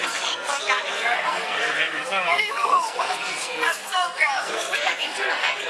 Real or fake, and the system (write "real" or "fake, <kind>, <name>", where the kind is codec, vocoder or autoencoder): fake, codec, SNAC